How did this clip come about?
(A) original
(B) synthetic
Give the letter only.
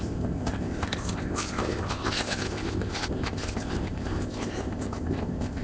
B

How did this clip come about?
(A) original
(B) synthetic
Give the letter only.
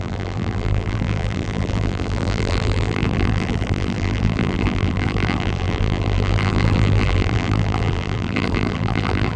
B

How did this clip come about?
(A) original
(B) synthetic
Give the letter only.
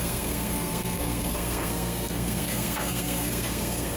B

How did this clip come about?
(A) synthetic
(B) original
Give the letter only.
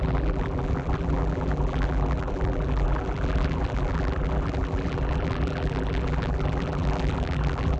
A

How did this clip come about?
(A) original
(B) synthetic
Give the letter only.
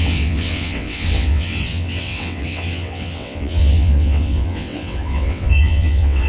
B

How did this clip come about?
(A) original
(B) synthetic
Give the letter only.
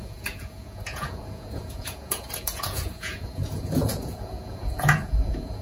B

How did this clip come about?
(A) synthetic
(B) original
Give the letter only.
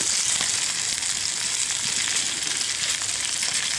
B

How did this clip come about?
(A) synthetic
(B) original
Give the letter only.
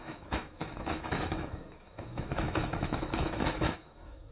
A